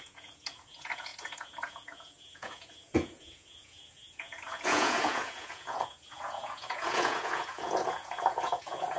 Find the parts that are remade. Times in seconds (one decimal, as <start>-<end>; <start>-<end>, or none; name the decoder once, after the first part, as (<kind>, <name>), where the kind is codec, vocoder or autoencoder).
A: 0.0-9.0 (vocoder, Vocos)